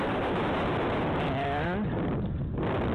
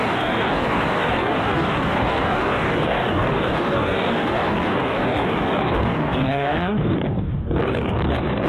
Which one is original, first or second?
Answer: first